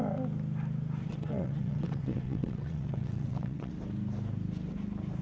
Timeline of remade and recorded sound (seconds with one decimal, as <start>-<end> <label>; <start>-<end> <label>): 0.0-1.0 recorded; 1.0-3.7 remade; 3.7-5.2 recorded